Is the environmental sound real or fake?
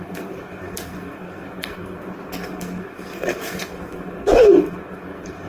fake